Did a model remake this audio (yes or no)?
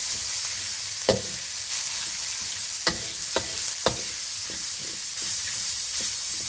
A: no